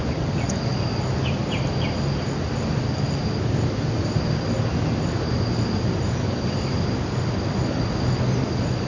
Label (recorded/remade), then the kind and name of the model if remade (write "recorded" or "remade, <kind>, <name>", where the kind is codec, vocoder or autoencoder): recorded